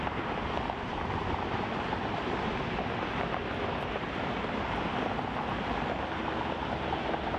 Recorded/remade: recorded